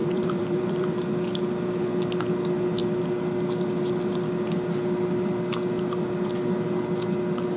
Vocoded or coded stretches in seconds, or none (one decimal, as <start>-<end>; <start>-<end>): 0.0-1.0